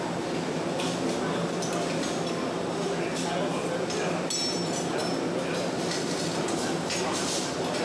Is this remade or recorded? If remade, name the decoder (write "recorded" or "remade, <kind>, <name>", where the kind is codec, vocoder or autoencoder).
recorded